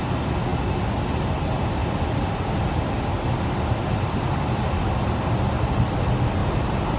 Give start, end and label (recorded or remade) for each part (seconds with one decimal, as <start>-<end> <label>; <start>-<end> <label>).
0.0-7.0 recorded

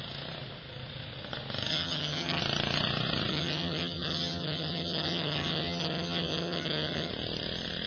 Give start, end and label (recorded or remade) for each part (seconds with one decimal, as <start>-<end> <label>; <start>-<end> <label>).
0.0-1.7 recorded; 1.7-2.4 remade; 2.4-3.3 recorded; 3.3-7.1 remade; 7.1-7.9 recorded

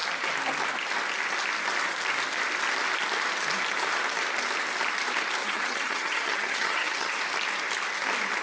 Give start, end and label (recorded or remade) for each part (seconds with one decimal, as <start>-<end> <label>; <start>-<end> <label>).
0.0-5.4 recorded; 5.4-7.2 remade; 7.2-8.4 recorded

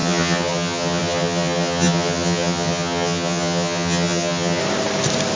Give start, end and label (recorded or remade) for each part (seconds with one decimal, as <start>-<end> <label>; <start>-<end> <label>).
0.0-4.6 remade; 4.6-5.4 recorded

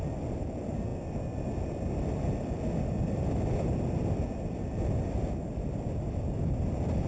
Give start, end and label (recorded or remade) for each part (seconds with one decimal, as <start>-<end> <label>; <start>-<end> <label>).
0.0-7.1 recorded

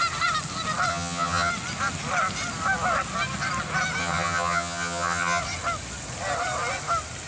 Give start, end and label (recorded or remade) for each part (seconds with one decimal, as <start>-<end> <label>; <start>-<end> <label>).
0.0-0.9 recorded; 0.9-1.5 remade; 1.5-4.0 recorded; 4.0-5.4 remade; 5.4-7.3 recorded

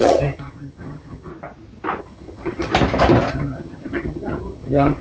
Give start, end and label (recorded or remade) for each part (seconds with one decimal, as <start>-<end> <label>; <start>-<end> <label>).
0.0-1.3 remade; 1.3-2.0 recorded; 2.0-2.7 remade; 2.7-3.3 recorded; 3.3-5.0 remade